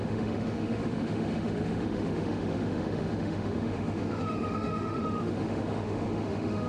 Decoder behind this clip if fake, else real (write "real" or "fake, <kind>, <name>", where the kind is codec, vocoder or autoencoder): fake, autoencoder, DAC-VAE